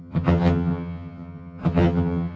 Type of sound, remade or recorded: remade